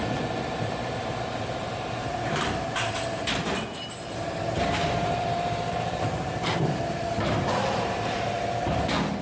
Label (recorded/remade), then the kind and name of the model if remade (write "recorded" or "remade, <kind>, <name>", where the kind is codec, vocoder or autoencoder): remade, vocoder, BigVGAN v2